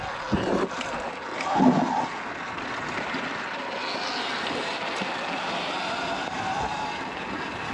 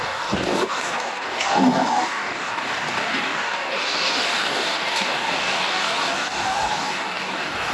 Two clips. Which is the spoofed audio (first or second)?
second